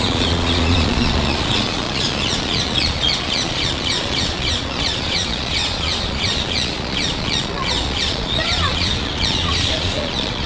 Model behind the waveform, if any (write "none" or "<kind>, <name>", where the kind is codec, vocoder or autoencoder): vocoder, Vocos